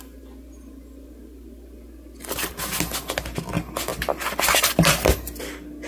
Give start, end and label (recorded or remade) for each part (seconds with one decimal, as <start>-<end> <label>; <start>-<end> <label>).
0.0-5.9 recorded

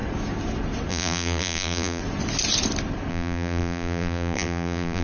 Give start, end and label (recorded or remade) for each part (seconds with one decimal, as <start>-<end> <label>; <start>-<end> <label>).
0.0-0.9 recorded; 0.9-2.0 remade; 2.0-3.1 recorded; 3.1-5.0 remade

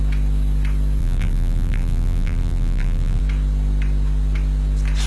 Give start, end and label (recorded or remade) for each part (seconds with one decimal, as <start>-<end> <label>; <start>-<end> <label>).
0.0-1.0 recorded; 1.0-3.2 remade; 3.2-5.1 recorded